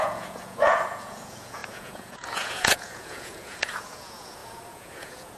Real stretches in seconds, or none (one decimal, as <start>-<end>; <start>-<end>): none